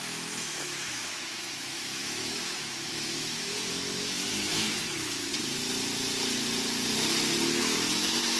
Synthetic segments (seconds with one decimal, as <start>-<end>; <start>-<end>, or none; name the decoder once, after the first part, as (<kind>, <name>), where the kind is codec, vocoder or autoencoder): 0.0-5.3 (autoencoder, DAC-VAE); 7.6-8.4